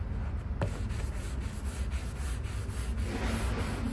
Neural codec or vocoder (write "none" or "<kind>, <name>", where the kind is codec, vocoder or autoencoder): none